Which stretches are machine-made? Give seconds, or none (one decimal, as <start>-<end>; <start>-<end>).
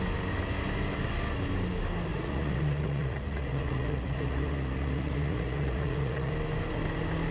2.1-6.3